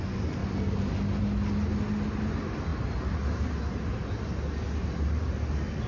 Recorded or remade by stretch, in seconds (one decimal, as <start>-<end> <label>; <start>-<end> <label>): 0.0-5.9 recorded

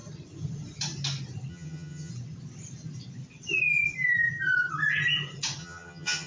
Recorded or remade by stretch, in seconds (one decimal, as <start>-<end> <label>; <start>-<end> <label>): 0.0-1.5 recorded; 1.5-2.1 remade; 2.1-5.6 recorded; 5.6-6.3 remade

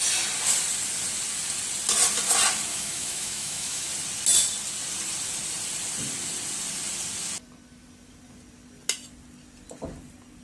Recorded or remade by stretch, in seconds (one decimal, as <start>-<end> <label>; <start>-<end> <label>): 0.0-2.7 recorded; 2.7-3.9 remade; 3.9-10.4 recorded

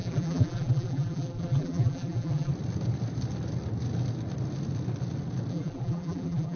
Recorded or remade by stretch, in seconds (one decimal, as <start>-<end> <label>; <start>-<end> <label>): 0.0-2.5 remade; 2.5-5.5 recorded; 5.5-6.6 remade

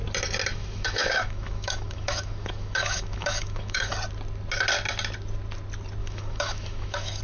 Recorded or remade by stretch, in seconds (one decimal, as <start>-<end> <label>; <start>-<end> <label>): 0.0-0.5 recorded; 0.5-3.9 remade; 3.9-6.0 recorded; 6.0-7.2 remade

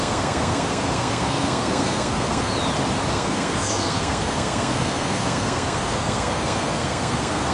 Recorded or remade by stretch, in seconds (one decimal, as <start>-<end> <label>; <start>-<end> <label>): 0.0-2.5 remade; 2.5-3.1 recorded; 3.1-7.5 remade

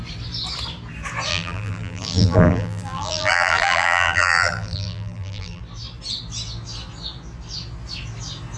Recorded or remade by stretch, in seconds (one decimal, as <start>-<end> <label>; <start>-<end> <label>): 0.0-1.3 recorded; 1.3-5.6 remade; 5.6-8.6 recorded